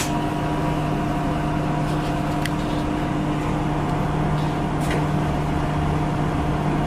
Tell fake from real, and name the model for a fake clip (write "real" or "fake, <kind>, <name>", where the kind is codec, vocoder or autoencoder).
real